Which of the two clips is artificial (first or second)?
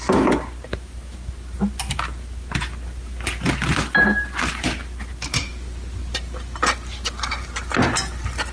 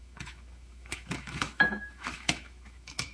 second